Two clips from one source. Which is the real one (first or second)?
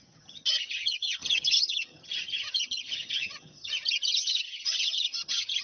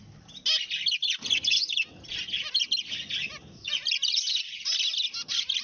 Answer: second